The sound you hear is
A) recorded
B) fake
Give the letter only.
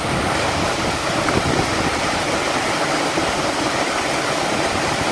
A